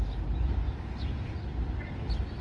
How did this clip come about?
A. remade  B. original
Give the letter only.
B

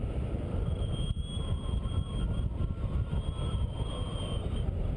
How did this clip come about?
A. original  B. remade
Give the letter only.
A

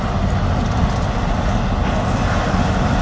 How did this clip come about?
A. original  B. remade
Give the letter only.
A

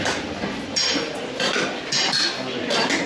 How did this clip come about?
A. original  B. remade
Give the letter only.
A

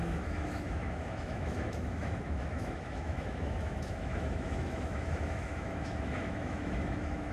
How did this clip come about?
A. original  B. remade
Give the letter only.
B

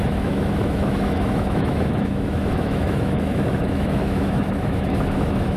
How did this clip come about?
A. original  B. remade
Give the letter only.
B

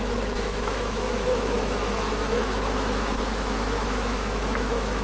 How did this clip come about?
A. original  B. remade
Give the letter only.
B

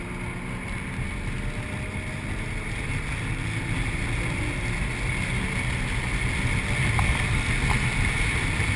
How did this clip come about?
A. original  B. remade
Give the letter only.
A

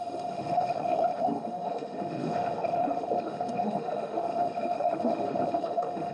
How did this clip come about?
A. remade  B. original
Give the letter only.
A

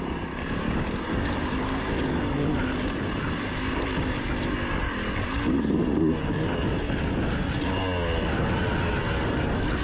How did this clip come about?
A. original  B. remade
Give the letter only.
A